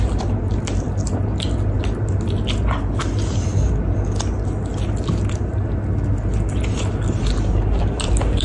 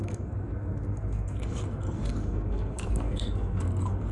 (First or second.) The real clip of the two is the first